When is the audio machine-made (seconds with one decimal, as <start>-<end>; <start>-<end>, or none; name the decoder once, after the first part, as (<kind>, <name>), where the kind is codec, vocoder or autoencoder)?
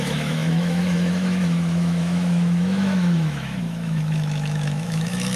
0.0-5.4 (autoencoder, DAC-VAE)